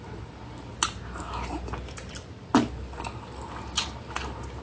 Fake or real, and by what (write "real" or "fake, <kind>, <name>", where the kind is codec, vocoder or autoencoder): real